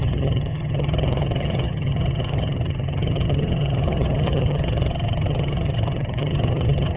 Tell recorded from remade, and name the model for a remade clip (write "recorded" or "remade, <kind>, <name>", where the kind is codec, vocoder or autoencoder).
remade, vocoder, HiFi-GAN